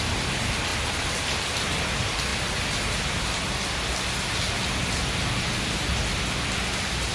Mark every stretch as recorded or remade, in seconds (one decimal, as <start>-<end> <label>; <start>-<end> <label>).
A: 0.0-7.1 recorded